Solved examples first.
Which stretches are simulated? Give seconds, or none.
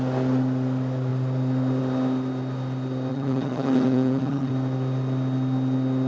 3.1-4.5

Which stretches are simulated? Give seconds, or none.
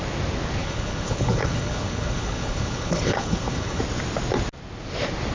0.6-3.8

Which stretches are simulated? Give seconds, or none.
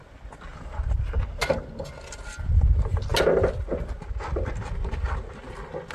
0.5-1.2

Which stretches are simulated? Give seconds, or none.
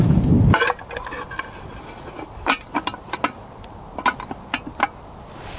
none